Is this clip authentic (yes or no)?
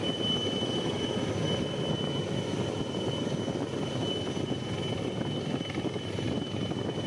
yes